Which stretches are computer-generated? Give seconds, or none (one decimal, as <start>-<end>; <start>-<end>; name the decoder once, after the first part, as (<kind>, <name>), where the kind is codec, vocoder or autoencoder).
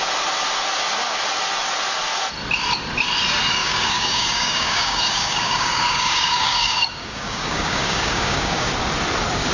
3.6-8.7 (codec, DAC)